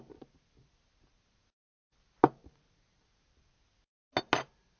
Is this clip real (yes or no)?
yes